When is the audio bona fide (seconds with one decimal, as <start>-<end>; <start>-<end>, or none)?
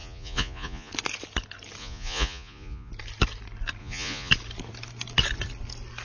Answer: 0.9-1.8; 2.9-3.8; 4.3-6.0